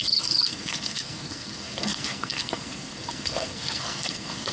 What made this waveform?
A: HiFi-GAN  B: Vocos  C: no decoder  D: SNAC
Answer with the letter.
D